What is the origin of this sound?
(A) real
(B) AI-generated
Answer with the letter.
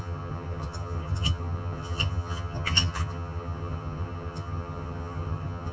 B